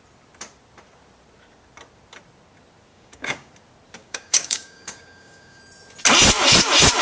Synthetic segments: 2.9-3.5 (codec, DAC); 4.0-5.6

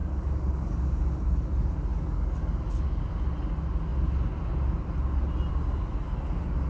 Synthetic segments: 0.0-1.0 (codec, DAC); 1.9-3.0